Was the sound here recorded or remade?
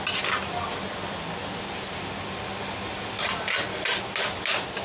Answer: recorded